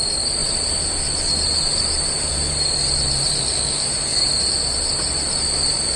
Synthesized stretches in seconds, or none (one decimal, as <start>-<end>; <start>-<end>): none